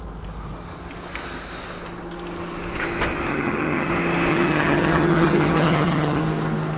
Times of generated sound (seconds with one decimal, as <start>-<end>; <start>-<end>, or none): 3.3-3.9; 4.3-6.2